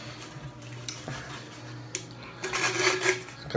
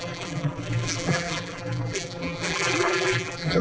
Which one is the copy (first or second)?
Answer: second